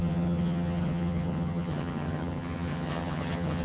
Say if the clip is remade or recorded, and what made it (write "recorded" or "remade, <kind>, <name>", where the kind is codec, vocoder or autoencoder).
remade, vocoder, HiFi-GAN